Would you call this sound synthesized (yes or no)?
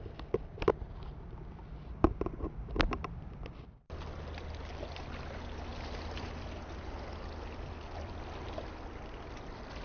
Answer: no